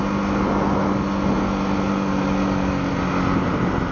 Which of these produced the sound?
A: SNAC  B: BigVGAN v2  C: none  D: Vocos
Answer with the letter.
C